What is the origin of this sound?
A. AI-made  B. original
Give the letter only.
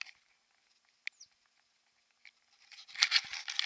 B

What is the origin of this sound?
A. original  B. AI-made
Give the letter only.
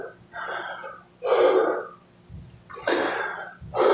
A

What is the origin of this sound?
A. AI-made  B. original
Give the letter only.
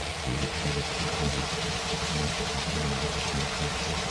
A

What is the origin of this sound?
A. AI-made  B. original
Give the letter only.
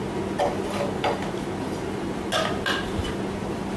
B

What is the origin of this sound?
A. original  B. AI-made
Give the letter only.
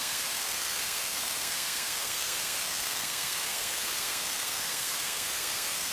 B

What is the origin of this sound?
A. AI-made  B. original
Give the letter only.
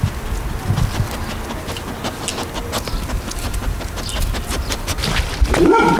B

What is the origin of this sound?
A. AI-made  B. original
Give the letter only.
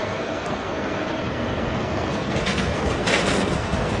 A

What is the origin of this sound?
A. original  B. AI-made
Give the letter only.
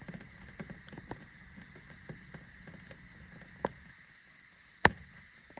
A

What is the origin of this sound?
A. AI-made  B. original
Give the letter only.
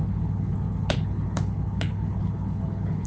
A